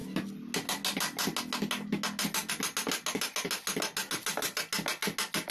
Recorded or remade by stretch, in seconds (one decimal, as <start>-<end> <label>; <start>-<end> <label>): 0.0-5.5 recorded